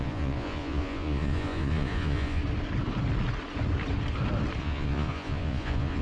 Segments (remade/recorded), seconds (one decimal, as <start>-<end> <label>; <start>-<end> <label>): 0.0-2.4 remade; 2.4-4.6 recorded; 4.6-6.0 remade